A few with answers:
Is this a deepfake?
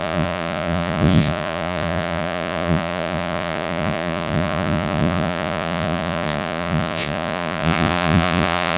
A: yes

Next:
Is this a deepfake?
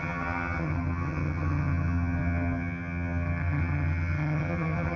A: yes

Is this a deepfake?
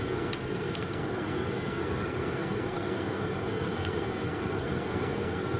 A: yes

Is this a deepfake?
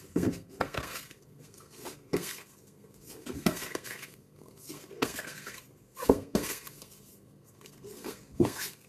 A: yes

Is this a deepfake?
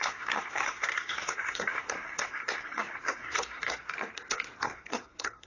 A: yes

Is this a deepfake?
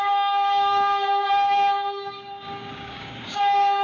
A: yes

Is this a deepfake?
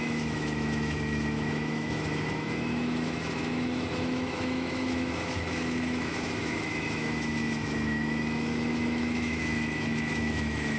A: yes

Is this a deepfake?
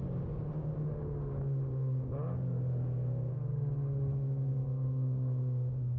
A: yes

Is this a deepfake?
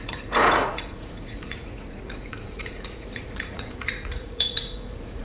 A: yes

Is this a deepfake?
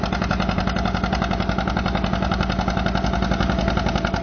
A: no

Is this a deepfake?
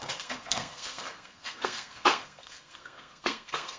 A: yes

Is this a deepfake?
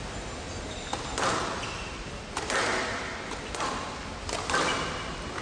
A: no